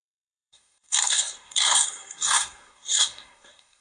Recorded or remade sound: remade